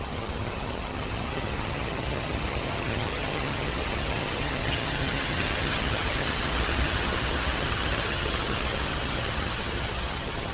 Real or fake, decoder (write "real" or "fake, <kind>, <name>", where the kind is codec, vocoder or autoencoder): fake, vocoder, HiFi-GAN